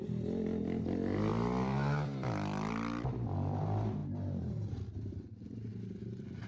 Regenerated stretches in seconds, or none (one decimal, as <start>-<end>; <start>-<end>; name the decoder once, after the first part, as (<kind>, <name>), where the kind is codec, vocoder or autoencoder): none